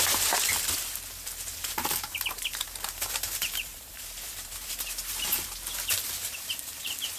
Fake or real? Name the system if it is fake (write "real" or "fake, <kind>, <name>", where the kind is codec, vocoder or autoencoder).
fake, vocoder, BigVGAN v2